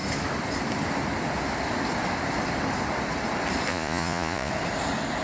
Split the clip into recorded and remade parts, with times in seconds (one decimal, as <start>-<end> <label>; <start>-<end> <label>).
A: 0.0-3.7 recorded; 3.7-4.5 remade; 4.5-5.2 recorded